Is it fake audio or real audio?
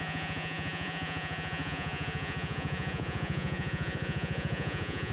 fake